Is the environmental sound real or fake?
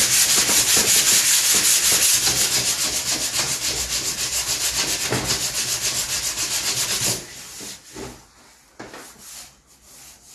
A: real